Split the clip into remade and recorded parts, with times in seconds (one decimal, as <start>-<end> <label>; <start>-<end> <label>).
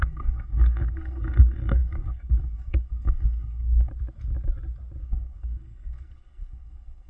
0.0-3.9 remade; 3.9-5.0 recorded; 5.0-7.1 remade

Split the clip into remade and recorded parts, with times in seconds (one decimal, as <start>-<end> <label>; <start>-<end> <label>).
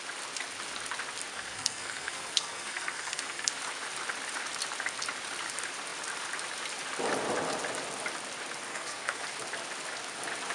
0.0-1.3 recorded; 1.3-3.5 remade; 3.5-8.7 recorded; 8.7-9.2 remade; 9.2-10.5 recorded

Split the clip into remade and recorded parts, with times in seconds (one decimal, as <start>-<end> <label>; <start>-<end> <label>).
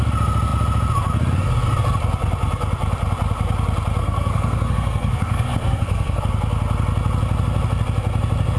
0.0-4.0 recorded; 4.0-6.2 remade; 6.2-8.6 recorded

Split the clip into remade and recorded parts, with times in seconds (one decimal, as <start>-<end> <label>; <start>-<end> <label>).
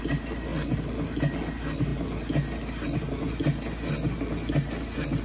0.0-5.2 recorded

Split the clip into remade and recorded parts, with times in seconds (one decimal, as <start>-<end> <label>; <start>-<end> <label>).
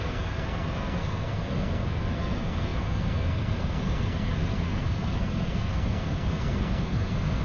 0.0-7.4 remade